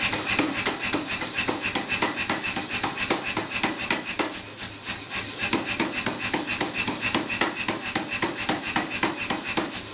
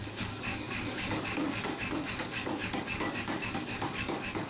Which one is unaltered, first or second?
first